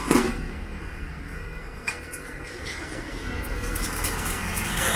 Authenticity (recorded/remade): remade